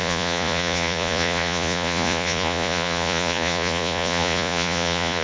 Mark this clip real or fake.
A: fake